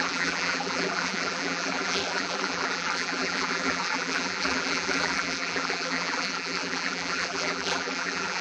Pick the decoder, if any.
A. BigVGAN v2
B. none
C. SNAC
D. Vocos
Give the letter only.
A